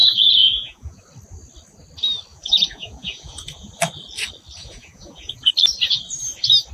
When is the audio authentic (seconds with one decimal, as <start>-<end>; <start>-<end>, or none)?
1.0-2.3; 3.7-4.6; 5.5-6.7